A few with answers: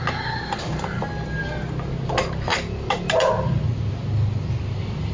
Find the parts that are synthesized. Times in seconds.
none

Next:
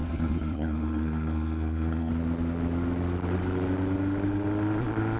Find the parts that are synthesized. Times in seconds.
0.0-2.1 (codec, SNAC)

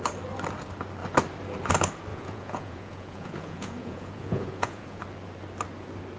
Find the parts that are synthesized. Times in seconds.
2.1-5.0 (vocoder, Vocos)

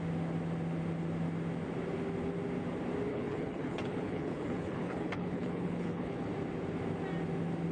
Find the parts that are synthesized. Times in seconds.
3.1-6.3 (codec, HILCodec)

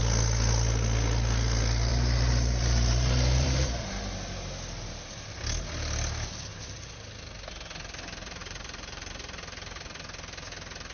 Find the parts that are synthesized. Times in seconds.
1.9-4.1 (vocoder, BigVGAN v2); 8.4-9.1

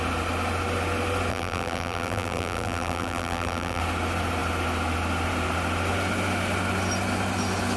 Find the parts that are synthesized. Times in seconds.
1.3-3.8 (vocoder, BigVGAN v2)

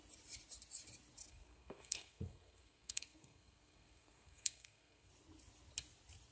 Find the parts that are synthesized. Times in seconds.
1.3-5.1 (codec, SNAC)